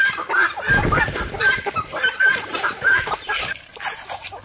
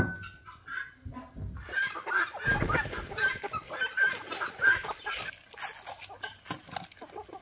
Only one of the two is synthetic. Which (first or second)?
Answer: first